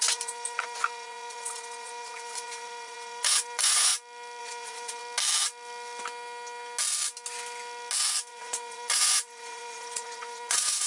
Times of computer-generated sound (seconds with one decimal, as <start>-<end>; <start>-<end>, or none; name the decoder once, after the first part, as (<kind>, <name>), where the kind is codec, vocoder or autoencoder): 0.0-3.9 (vocoder, Vocos); 4.4-5.0; 8.3-10.9